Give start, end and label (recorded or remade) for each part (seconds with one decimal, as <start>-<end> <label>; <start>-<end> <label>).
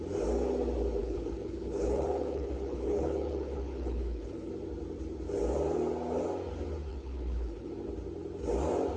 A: 0.0-1.0 recorded; 1.0-4.5 remade; 4.5-6.9 recorded; 6.9-7.7 remade; 7.7-9.0 recorded